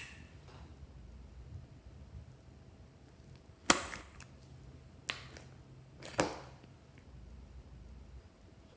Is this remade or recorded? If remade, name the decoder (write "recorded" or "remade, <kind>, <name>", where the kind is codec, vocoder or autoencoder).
recorded